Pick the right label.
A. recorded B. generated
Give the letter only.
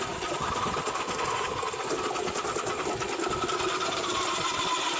A